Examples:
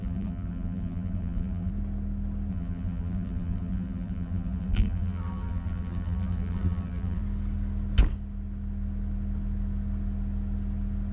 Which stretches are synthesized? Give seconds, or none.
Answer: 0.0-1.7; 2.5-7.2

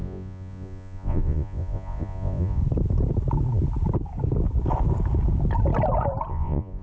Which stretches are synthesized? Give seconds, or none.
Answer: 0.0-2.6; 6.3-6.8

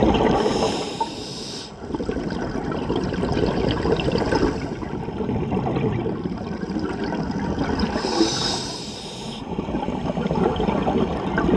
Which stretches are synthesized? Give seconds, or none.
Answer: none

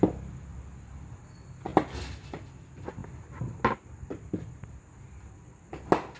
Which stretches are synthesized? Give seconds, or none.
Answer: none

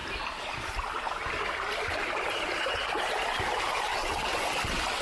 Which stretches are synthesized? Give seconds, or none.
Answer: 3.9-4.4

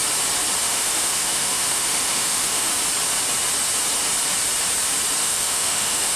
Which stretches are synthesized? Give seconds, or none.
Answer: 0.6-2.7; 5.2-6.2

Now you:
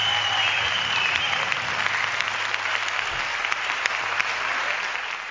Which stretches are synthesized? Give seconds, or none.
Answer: none